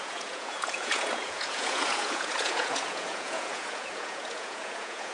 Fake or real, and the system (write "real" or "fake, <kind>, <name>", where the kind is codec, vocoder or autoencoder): fake, vocoder, Vocos